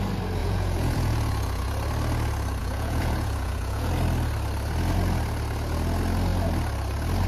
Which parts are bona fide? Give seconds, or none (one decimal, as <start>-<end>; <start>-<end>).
0.0-0.4; 1.7-2.6; 3.9-7.3